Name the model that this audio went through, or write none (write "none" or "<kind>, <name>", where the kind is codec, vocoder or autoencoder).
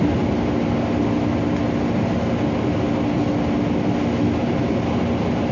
none